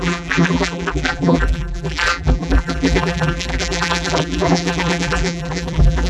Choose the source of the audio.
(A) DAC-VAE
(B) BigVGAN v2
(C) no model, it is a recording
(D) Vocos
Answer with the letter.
B